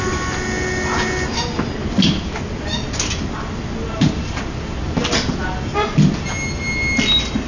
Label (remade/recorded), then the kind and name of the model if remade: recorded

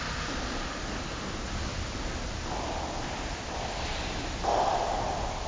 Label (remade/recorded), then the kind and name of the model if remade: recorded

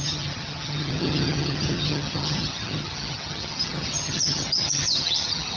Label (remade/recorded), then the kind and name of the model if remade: remade, vocoder, HiFi-GAN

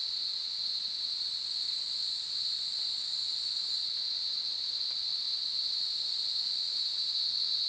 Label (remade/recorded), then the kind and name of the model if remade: recorded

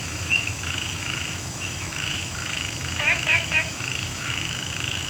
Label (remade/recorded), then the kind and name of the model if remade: remade, autoencoder, DAC-VAE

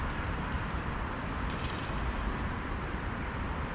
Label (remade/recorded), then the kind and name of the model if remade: remade, vocoder, BigVGAN v2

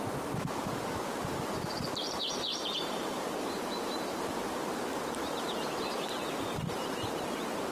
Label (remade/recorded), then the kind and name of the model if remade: remade, vocoder, BigVGAN v2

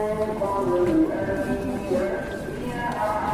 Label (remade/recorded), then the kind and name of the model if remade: recorded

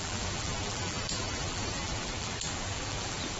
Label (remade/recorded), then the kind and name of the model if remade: remade, vocoder, BigVGAN v2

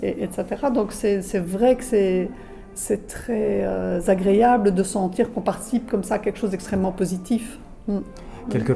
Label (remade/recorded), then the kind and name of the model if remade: recorded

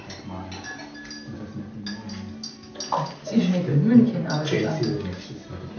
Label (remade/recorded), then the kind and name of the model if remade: recorded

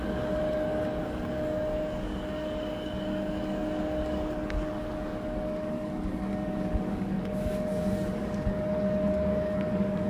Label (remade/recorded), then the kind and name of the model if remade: remade, codec, DAC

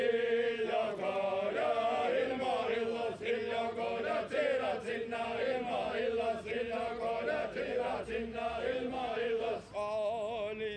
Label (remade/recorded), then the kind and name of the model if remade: recorded